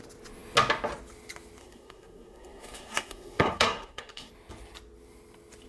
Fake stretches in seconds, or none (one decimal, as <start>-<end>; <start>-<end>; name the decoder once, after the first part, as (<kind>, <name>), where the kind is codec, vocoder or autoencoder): 1.6-4.3 (codec, SNAC)